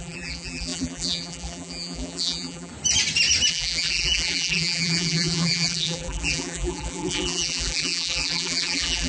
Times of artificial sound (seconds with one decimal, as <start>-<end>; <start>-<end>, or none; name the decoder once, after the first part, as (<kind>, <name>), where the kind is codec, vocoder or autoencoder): 0.0-2.7 (vocoder, BigVGAN v2); 3.5-9.1